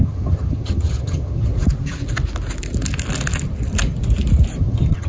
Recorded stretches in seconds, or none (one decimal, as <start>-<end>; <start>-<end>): 1.5-4.6